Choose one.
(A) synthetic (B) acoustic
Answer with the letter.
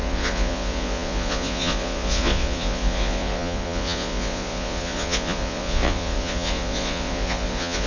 A